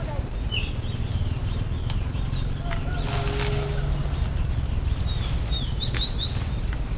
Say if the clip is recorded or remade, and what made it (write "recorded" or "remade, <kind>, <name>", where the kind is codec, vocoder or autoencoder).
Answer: recorded